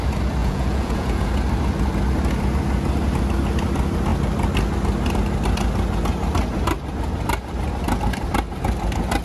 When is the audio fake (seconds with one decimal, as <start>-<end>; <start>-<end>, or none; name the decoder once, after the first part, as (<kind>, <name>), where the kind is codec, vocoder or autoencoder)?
0.4-1.3 (vocoder, Vocos)